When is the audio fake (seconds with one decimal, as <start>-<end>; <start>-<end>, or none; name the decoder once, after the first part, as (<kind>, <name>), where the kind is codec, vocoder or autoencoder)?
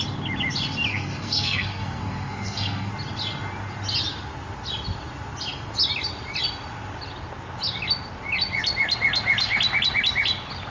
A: 0.9-2.9 (codec, SNAC)